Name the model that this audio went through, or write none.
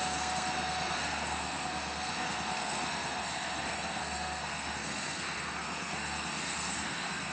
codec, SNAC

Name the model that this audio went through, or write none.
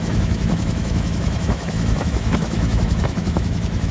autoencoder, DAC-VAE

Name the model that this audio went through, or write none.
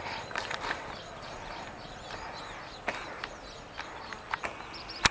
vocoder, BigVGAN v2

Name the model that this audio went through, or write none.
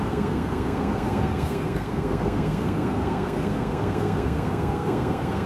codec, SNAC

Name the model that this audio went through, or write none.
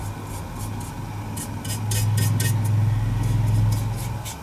none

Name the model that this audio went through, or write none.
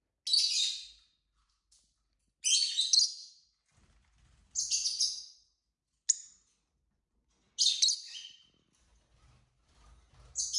none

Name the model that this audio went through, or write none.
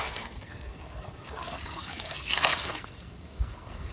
codec, SNAC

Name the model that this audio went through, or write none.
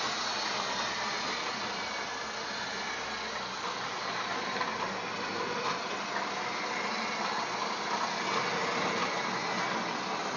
none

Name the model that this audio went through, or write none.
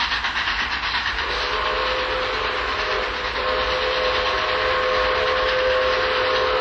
none